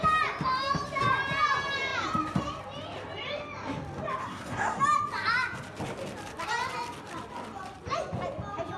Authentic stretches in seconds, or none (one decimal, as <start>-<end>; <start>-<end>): 0.0-4.2; 4.8-8.8